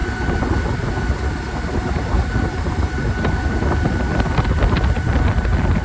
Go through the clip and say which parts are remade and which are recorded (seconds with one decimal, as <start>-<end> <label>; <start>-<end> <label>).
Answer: 0.0-5.8 recorded